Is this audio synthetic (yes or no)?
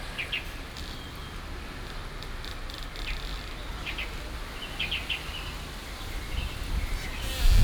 no